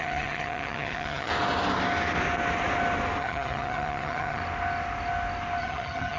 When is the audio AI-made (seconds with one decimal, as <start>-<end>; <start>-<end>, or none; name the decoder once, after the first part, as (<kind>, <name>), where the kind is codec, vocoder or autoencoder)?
0.0-1.3 (vocoder, HiFi-GAN); 3.2-4.4; 5.6-6.2